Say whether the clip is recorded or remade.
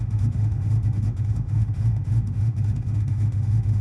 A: remade